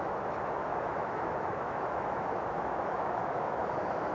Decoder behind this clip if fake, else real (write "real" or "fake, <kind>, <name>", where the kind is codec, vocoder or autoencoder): fake, autoencoder, DAC-VAE